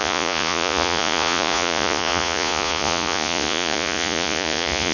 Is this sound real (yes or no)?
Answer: no